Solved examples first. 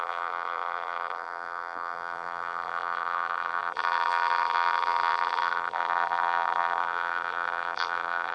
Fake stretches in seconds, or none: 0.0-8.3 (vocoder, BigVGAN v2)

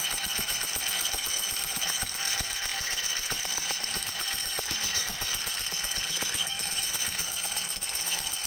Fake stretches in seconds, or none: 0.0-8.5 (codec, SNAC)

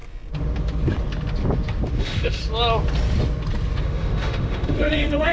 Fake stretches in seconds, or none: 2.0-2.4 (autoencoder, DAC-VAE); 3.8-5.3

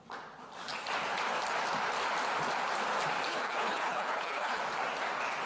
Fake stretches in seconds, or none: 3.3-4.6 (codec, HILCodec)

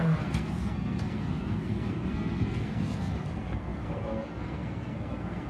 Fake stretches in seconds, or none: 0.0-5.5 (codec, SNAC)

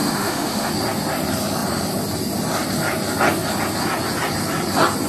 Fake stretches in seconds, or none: 0.0-0.7 (autoencoder, DAC-VAE)